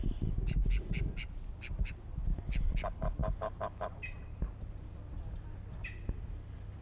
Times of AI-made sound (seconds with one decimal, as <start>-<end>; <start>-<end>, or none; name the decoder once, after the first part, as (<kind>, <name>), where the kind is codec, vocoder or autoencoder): none